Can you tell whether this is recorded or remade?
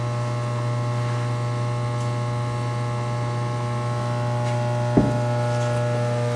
recorded